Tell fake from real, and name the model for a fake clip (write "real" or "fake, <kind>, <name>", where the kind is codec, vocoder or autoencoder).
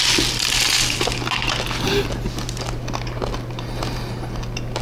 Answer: real